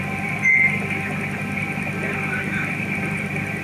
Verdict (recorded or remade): remade